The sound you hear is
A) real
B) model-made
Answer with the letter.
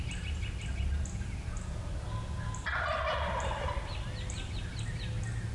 A